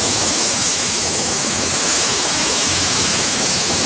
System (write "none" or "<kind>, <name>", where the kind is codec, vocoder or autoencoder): autoencoder, DAC-VAE